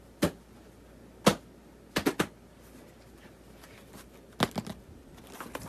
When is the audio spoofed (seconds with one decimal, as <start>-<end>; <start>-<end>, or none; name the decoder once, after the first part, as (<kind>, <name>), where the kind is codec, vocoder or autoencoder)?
none